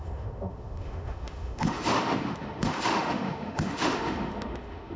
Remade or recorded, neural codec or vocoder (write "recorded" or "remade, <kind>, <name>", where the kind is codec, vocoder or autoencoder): remade, autoencoder, DAC-VAE